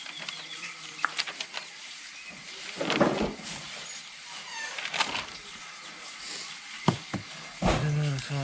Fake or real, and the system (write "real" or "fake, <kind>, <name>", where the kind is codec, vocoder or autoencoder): real